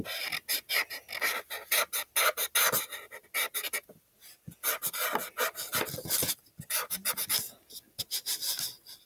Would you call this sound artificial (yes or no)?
no